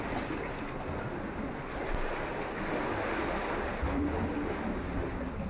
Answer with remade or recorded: recorded